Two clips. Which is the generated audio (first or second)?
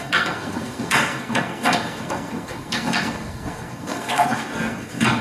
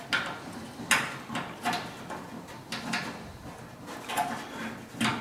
first